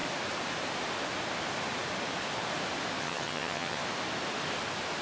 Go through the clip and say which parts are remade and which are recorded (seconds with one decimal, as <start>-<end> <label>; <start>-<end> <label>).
0.0-3.0 recorded; 3.0-3.8 remade; 3.8-5.0 recorded